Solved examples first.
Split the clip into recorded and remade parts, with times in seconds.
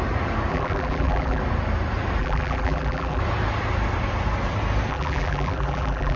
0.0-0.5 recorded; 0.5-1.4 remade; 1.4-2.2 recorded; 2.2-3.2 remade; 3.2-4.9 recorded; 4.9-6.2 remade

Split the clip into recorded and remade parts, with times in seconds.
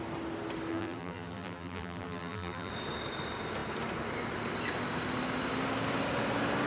0.0-0.7 recorded; 0.7-2.7 remade; 2.7-6.7 recorded